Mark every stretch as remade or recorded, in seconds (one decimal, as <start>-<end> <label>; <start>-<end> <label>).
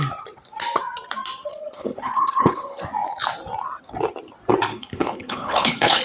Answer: 0.0-1.5 recorded; 1.5-2.8 remade; 2.8-4.7 recorded; 4.7-6.0 remade